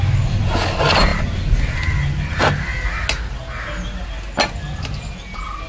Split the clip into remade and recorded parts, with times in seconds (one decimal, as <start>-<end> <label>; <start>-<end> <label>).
0.0-5.7 recorded